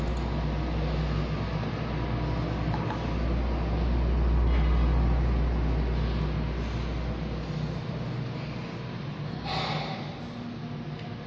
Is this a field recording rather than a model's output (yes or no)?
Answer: yes